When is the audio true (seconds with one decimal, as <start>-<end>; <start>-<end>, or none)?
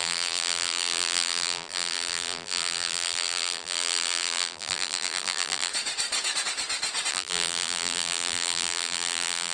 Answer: 5.7-7.1